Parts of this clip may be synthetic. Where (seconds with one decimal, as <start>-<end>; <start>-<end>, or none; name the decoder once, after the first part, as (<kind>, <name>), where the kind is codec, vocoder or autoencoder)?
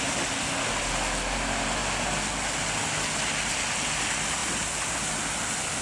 none